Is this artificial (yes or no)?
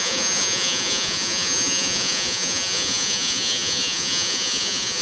yes